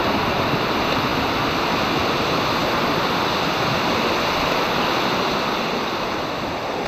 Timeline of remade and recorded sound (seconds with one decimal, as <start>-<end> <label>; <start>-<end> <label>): 0.0-6.9 recorded